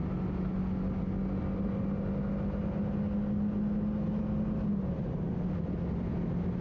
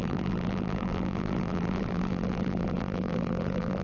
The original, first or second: first